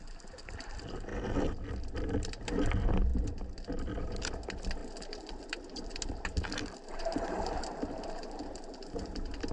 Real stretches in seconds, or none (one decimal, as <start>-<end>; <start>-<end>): 1.1-1.7; 3.1-4.2